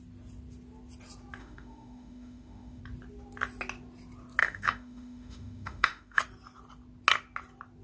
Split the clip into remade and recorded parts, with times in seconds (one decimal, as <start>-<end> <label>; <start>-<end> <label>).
0.0-1.4 recorded; 1.4-2.8 remade; 2.8-4.4 recorded; 4.4-6.2 remade; 6.2-7.8 recorded